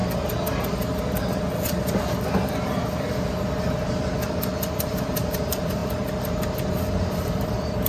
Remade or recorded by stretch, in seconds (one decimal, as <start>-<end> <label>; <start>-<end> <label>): 0.0-4.7 recorded; 4.7-5.8 remade; 5.8-6.9 recorded; 6.9-7.9 remade